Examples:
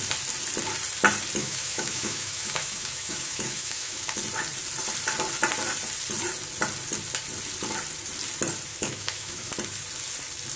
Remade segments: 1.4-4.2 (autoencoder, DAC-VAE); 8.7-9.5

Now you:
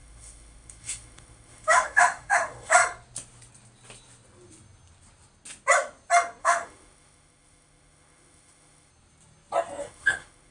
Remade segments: 0.0-2.8 (autoencoder, DAC-VAE); 6.4-8.9; 9.8-10.5

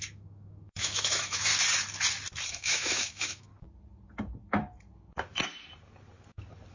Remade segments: 0.0-1.5 (autoencoder, DAC-VAE); 2.5-3.5

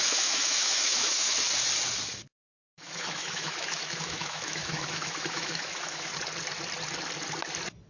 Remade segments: 0.0-1.5 (autoencoder, DAC-VAE); 2.2-6.1

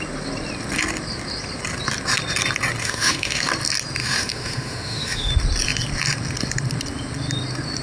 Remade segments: 2.8-3.5 (autoencoder, DAC-VAE); 4.0-5.3

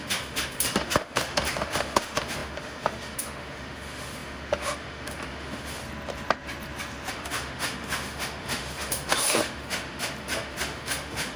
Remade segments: 0.0-5.8 (autoencoder, DAC-VAE); 7.1-11.4